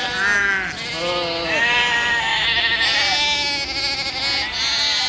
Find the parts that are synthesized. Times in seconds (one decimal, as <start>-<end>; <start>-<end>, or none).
none